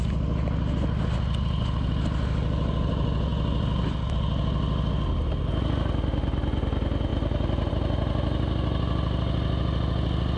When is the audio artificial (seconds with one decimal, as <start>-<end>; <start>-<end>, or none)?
none